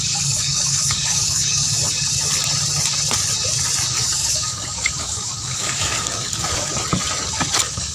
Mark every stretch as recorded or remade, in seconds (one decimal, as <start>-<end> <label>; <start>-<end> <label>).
0.0-1.8 remade; 1.8-3.9 recorded; 3.9-6.7 remade; 6.7-7.5 recorded; 7.5-7.9 remade